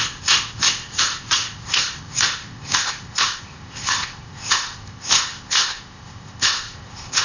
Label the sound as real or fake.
fake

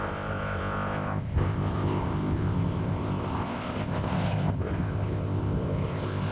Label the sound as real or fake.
fake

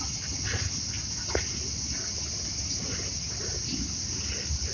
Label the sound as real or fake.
real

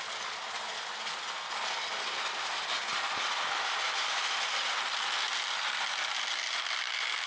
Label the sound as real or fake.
real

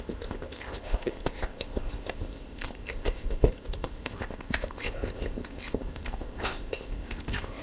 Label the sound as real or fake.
fake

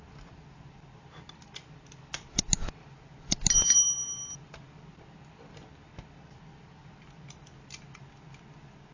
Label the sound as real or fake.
real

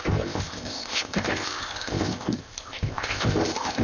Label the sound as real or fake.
fake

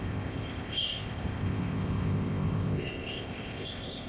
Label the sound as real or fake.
fake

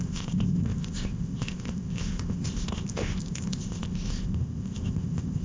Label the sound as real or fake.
fake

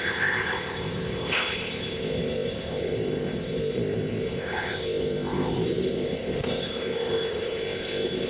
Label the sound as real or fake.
fake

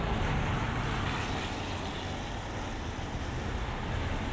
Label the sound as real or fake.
real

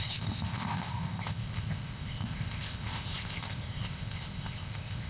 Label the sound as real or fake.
fake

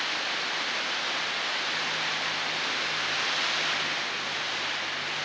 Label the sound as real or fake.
real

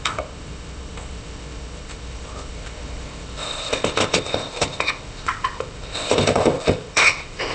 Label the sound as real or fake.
fake